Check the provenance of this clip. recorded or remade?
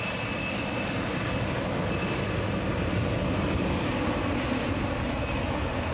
recorded